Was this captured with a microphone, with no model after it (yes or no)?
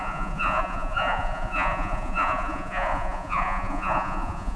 no